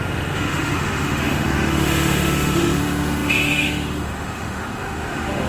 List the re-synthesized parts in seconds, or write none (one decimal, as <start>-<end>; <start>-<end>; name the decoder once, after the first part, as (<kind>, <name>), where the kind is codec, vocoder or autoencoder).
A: 0.0-5.5 (autoencoder, DAC-VAE)